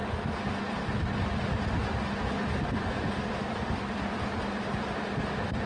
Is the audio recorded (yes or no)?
yes